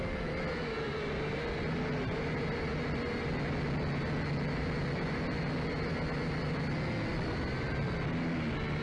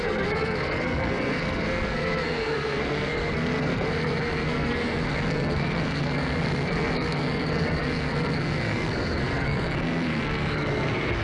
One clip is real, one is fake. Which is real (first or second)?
first